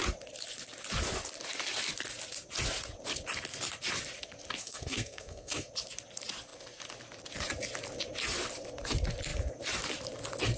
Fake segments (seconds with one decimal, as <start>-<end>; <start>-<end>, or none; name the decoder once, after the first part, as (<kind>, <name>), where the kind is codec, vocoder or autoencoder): 4.6-5.7 (codec, SNAC)